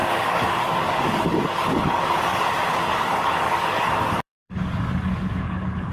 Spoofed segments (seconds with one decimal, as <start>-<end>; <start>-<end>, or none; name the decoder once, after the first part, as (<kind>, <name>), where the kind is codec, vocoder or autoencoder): 0.0-5.9 (codec, DAC)